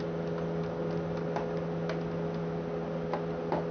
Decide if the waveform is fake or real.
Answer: real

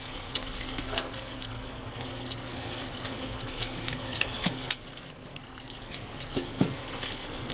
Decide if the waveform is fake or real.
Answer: fake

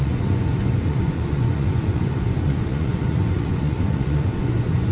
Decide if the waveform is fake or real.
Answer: fake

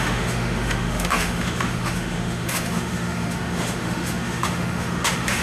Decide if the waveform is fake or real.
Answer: fake